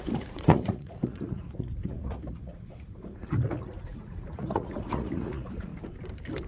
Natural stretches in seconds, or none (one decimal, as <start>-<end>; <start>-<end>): 5.7-6.5